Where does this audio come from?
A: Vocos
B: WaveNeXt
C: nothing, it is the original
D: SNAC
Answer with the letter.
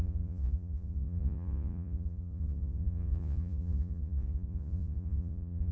A